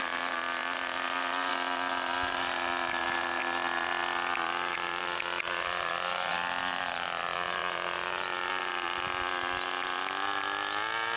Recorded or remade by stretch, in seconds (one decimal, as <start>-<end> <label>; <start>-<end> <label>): 0.0-11.2 recorded